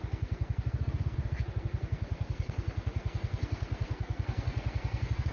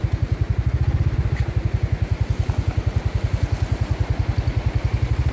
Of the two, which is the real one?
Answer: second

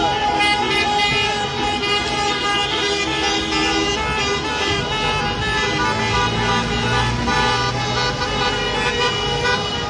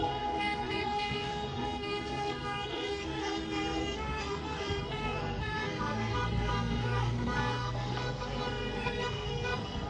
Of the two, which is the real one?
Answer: first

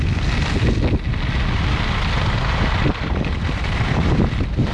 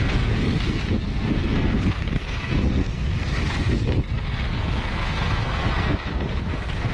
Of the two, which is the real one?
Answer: first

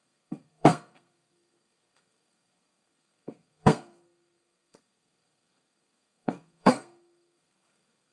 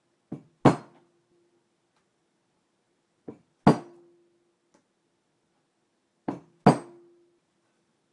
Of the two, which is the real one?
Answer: second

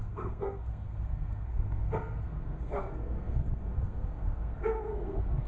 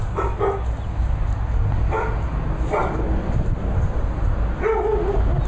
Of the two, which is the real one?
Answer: second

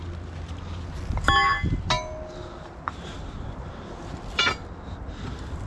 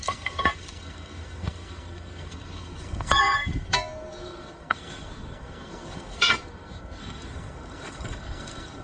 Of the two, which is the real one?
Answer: first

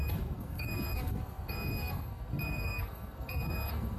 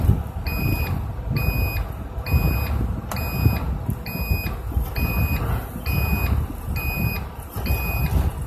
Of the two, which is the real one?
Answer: second